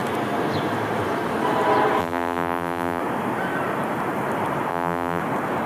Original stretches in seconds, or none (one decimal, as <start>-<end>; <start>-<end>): 0.0-2.0; 3.0-4.7; 5.2-5.7